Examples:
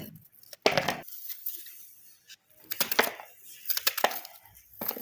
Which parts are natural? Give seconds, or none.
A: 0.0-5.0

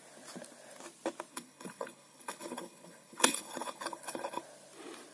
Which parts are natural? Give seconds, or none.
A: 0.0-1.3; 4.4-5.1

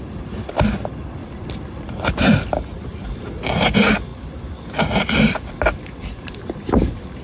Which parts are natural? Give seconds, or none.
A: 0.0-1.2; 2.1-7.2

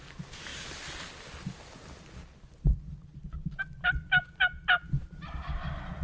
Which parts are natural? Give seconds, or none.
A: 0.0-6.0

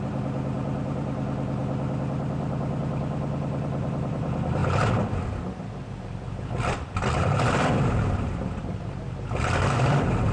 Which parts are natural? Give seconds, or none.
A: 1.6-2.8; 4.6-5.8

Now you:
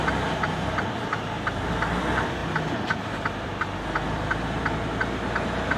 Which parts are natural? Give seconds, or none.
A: 0.0-5.8